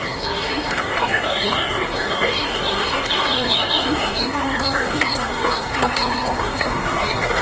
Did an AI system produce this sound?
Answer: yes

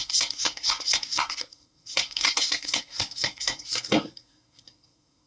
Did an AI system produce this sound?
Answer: yes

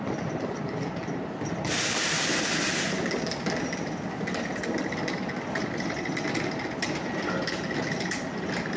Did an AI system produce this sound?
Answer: no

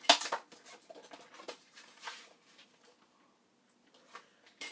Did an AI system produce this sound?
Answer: no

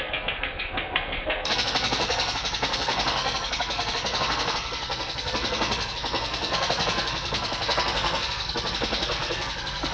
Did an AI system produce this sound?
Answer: yes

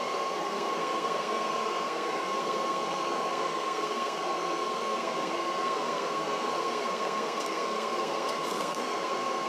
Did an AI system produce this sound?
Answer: yes